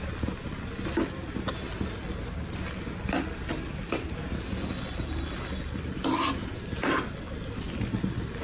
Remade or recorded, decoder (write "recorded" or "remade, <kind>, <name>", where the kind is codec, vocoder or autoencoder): recorded